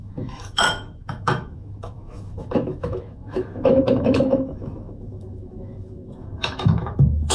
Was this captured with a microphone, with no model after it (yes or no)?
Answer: no